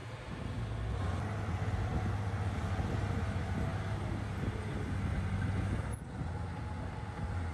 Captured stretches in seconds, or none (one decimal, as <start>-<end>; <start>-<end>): 0.6-7.5